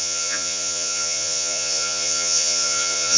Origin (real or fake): fake